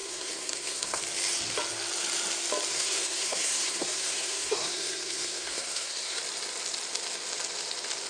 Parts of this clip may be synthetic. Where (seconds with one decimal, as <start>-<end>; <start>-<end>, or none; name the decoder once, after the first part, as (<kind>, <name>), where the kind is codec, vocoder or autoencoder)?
0.0-1.0 (codec, SNAC); 2.7-6.2